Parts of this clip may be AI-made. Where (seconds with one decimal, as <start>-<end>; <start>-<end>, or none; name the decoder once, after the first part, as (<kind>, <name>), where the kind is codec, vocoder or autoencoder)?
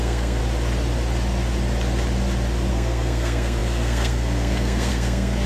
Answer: 0.0-0.4 (codec, SNAC); 2.7-5.5